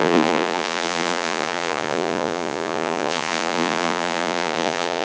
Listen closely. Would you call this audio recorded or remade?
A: remade